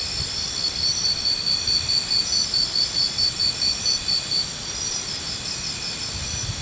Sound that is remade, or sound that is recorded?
recorded